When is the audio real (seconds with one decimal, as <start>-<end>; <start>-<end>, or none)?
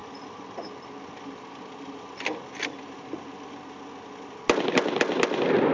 0.0-5.7